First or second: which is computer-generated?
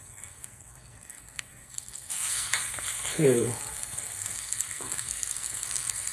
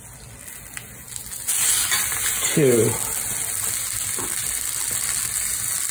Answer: first